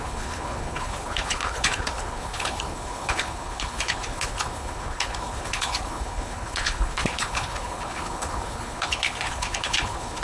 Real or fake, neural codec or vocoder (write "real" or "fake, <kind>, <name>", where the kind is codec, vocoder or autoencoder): fake, codec, HILCodec